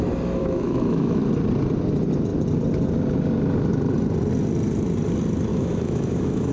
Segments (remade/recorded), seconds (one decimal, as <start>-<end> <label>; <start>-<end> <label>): 0.0-0.4 recorded; 0.4-1.2 remade; 1.2-5.5 recorded; 5.5-6.5 remade